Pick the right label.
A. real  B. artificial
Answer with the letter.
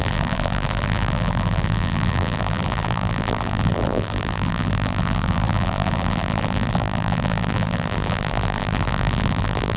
B